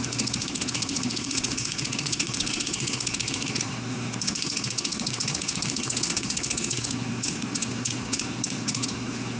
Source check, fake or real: fake